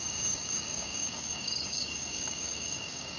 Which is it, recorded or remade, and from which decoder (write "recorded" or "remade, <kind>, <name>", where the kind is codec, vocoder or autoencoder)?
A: remade, codec, DAC